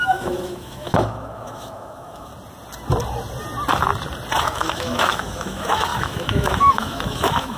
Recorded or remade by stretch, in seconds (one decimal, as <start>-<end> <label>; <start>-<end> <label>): 0.0-2.3 remade; 2.3-4.4 recorded; 4.4-7.6 remade